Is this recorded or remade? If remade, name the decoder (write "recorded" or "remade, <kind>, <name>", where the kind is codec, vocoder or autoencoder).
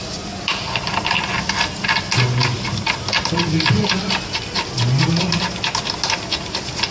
recorded